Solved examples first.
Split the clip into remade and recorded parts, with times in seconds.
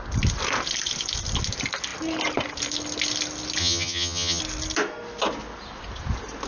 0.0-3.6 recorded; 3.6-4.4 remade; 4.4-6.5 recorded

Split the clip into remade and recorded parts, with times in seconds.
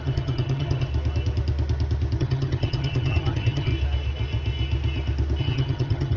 0.0-0.9 remade; 0.9-2.2 recorded; 2.2-3.7 remade; 3.7-5.4 recorded; 5.4-6.2 remade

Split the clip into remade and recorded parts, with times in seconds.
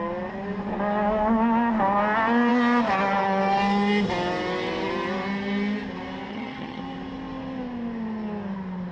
0.0-6.3 recorded; 6.3-6.8 remade; 6.8-8.9 recorded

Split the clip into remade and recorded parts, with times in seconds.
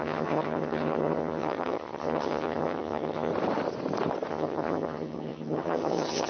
0.0-3.3 remade; 3.3-4.3 recorded; 4.3-6.3 remade